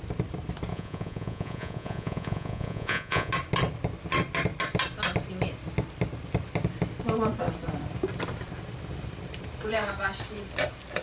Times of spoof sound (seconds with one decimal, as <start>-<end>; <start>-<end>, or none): 0.7-3.3